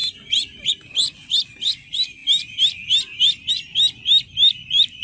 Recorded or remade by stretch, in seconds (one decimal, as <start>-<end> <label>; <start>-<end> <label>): 0.0-5.0 recorded